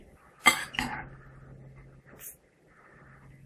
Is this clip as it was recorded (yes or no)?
yes